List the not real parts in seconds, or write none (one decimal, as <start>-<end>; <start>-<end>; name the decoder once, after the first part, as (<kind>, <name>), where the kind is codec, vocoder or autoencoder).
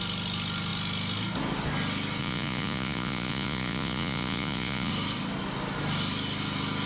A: 2.2-4.9 (vocoder, Vocos)